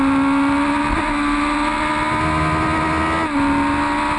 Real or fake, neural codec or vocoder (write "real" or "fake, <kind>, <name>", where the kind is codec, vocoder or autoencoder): real